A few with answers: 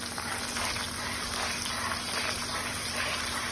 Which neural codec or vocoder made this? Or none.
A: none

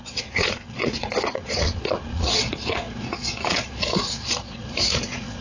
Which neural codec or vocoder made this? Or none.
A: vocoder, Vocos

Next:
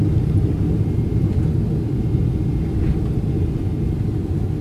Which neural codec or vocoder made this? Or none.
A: none